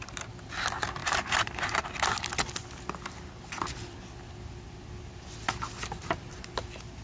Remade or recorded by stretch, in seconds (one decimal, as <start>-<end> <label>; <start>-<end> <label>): 0.0-1.0 recorded; 1.0-1.8 remade; 1.8-6.0 recorded; 6.0-6.6 remade; 6.6-7.0 recorded